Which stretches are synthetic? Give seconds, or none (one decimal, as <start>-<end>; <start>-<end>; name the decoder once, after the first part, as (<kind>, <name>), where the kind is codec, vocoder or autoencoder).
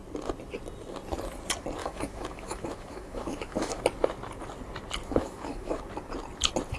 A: 1.8-3.8 (autoencoder, DAC-VAE); 5.0-5.8